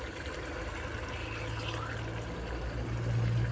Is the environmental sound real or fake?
real